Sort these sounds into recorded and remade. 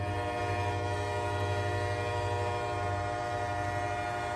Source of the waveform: recorded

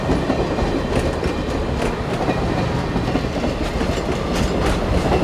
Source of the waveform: recorded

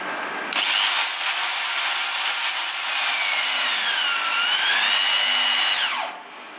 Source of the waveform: recorded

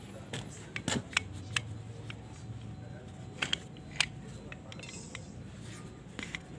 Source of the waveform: recorded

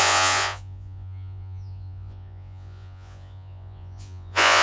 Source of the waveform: remade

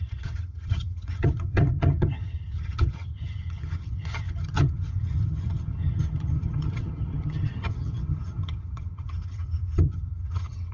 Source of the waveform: remade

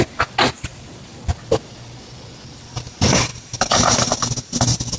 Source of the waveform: recorded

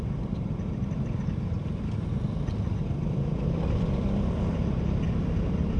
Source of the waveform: recorded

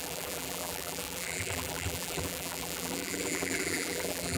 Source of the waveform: remade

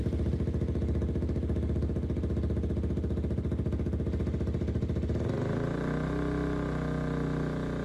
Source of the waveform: recorded